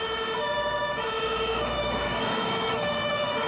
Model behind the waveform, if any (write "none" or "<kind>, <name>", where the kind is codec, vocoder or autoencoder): autoencoder, DAC-VAE